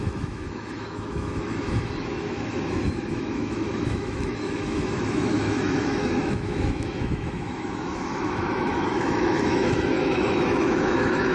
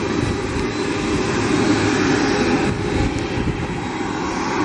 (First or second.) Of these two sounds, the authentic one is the second